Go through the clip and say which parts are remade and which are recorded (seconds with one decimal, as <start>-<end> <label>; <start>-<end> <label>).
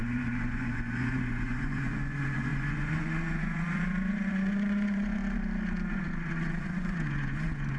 0.0-5.2 remade; 5.2-5.9 recorded; 5.9-7.8 remade